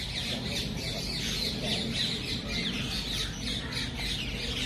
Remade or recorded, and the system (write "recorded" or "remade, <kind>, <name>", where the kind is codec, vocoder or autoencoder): recorded